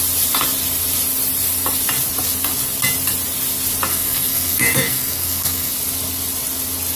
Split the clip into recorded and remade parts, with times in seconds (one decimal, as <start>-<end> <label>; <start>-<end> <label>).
0.0-3.9 recorded; 3.9-5.7 remade; 5.7-6.9 recorded